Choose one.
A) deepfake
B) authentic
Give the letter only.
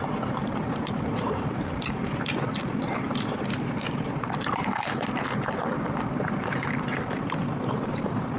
B